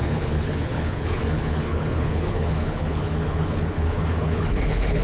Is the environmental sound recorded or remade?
remade